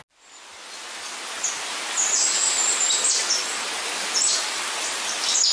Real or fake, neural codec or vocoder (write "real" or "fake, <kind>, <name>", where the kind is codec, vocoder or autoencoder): real